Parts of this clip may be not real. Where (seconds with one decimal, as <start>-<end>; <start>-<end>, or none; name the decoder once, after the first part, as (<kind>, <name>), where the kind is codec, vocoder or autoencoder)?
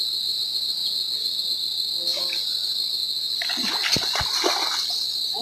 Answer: none